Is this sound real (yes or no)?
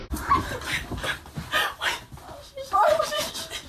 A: no